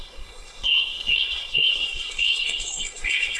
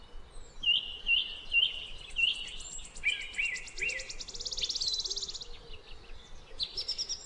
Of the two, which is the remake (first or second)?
first